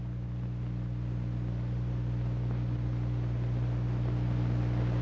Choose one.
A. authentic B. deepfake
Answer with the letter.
A